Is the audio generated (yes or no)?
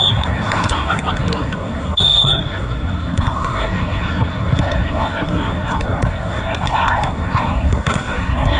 yes